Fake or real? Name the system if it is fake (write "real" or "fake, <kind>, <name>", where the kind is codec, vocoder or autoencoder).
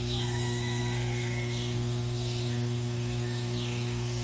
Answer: fake, codec, SNAC